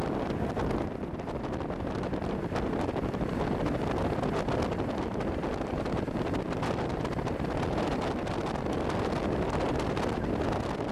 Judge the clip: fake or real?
real